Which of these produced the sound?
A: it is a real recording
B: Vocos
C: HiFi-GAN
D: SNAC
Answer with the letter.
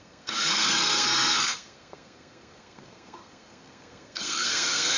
D